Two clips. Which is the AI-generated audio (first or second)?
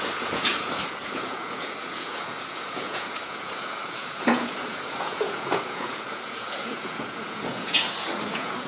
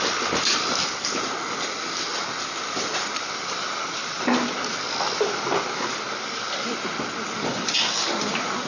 first